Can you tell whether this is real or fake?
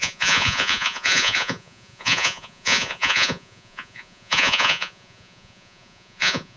fake